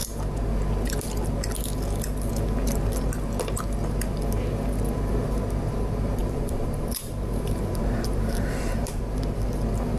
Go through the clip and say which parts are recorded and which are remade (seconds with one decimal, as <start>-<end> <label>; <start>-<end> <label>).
0.0-6.2 recorded; 6.2-9.0 remade; 9.0-10.0 recorded